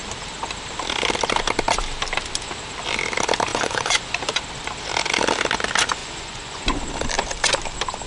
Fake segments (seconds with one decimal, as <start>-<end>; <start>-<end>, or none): 3.5-4.4; 6.0-6.8